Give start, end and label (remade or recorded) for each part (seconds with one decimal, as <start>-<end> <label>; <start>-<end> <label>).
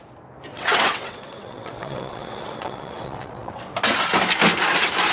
0.0-0.5 recorded; 0.5-3.6 remade; 3.6-5.1 recorded